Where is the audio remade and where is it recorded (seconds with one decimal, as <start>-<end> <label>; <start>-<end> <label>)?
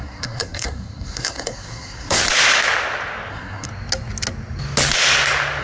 0.0-2.2 remade; 2.2-3.3 recorded; 3.3-3.7 remade; 3.7-5.6 recorded